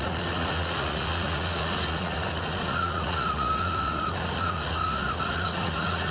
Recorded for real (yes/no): no